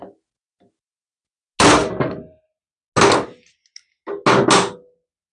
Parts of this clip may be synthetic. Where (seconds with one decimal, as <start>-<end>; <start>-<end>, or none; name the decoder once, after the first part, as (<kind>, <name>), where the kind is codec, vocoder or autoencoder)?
none